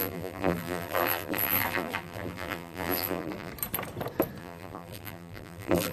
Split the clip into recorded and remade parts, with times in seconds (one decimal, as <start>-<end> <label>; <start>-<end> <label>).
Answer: 0.0-3.5 remade; 3.5-4.4 recorded; 4.4-5.9 remade